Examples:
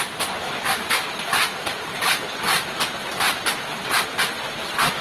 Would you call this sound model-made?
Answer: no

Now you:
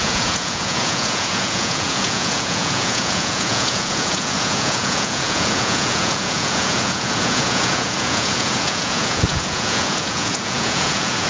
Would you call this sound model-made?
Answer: yes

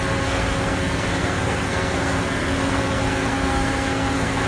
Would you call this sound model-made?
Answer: yes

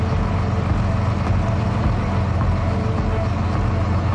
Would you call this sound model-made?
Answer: no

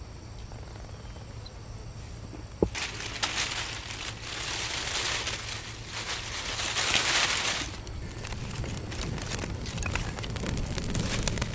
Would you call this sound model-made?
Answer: no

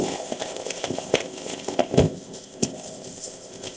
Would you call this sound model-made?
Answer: yes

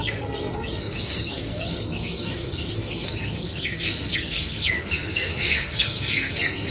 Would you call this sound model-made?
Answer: yes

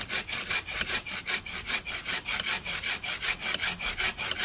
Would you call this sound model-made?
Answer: no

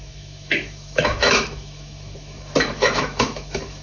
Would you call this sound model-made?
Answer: yes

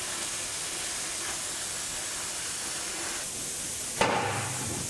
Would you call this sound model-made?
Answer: no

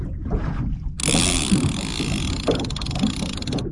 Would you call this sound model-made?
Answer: no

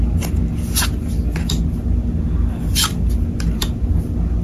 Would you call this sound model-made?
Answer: no